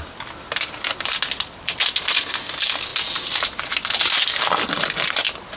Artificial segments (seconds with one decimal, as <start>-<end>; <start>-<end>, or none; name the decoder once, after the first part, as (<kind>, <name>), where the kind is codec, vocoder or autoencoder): none